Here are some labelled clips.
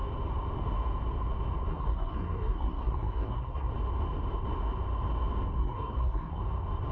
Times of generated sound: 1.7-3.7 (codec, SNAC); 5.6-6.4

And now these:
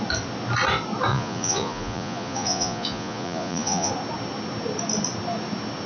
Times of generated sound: 1.1-3.9 (vocoder, Vocos)